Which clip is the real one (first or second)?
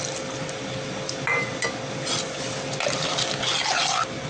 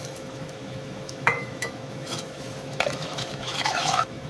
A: first